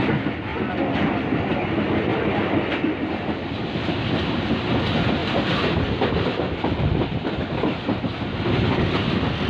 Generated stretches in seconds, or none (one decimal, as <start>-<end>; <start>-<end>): 0.5-1.0; 2.1-4.5